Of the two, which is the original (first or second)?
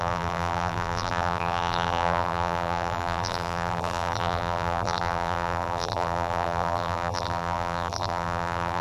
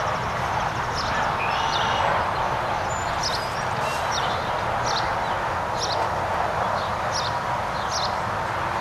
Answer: second